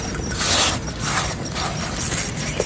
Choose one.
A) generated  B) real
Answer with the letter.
B